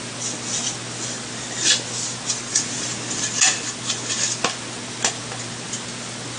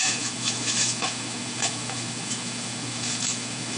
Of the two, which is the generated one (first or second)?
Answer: second